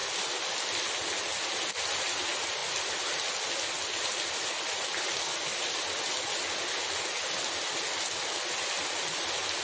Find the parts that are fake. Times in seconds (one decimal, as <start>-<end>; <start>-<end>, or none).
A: none